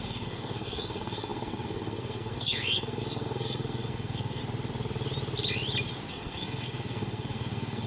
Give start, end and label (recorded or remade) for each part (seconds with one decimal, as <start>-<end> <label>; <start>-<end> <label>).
0.0-4.4 remade; 4.4-6.1 recorded; 6.1-7.9 remade